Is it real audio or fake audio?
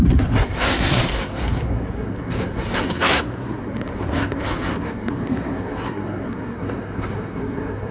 fake